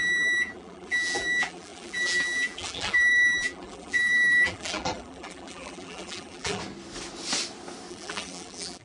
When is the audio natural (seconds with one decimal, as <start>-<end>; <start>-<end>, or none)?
6.6-7.9